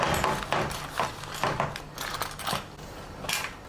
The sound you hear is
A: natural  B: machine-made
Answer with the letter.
A